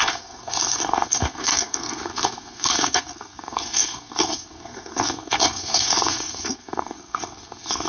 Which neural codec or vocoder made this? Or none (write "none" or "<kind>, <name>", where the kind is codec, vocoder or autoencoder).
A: codec, SNAC